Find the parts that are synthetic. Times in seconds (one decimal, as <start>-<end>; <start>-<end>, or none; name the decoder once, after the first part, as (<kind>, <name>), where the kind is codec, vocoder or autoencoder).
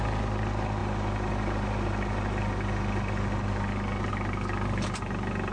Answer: none